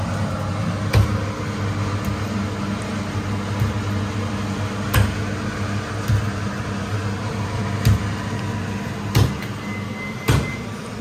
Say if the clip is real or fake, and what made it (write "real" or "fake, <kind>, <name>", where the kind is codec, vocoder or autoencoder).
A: real